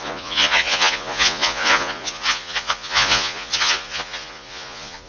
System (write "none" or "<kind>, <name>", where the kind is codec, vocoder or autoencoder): vocoder, Vocos